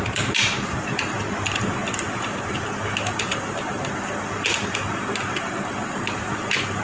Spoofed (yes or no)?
no